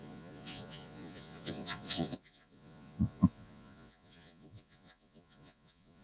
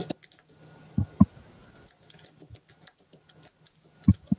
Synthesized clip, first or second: first